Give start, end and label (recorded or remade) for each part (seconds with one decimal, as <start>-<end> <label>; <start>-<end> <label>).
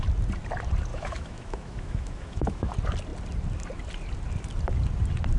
0.0-0.9 recorded; 0.9-2.7 remade; 2.7-5.4 recorded